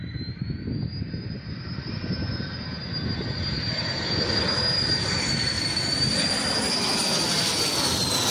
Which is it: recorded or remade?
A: recorded